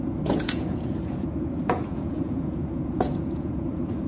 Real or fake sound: fake